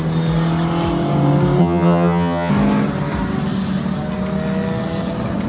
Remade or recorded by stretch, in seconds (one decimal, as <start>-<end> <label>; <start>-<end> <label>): 0.0-1.6 recorded; 1.6-2.5 remade; 2.5-5.5 recorded